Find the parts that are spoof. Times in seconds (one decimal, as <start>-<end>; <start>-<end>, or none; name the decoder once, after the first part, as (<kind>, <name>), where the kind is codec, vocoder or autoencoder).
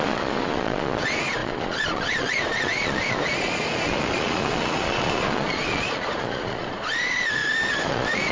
0.0-8.3 (vocoder, Vocos)